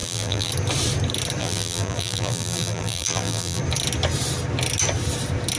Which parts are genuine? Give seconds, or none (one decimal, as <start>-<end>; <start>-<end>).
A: 0.5-1.4; 3.6-5.6